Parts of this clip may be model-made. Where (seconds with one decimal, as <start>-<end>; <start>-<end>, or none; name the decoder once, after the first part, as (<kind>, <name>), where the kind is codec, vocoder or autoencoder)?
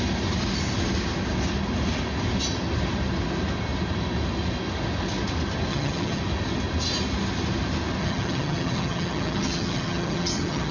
5.7-6.2 (vocoder, HiFi-GAN); 8.0-10.7